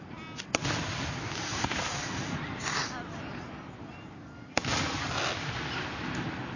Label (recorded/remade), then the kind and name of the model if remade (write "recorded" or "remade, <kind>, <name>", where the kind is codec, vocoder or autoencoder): recorded